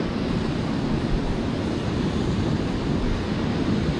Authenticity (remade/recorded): recorded